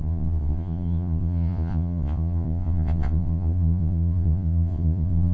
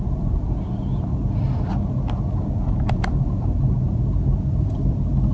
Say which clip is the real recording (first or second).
second